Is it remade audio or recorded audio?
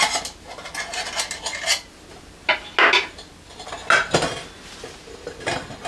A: recorded